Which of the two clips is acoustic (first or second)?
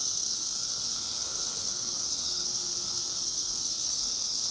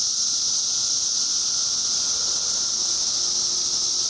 second